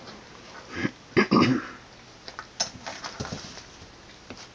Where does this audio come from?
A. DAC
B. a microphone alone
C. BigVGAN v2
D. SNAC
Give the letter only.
B